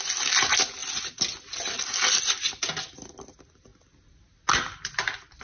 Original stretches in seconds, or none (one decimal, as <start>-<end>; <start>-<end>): 0.0-5.4